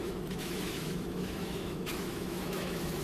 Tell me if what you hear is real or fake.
fake